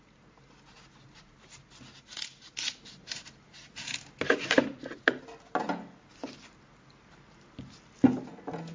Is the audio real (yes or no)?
yes